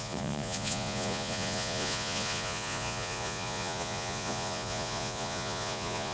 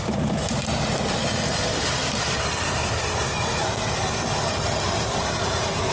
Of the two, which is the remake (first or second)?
first